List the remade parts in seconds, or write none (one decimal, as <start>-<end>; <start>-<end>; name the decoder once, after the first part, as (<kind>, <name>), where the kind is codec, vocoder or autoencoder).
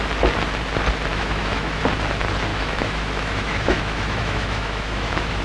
1.1-1.8 (autoencoder, DAC-VAE); 2.5-5.4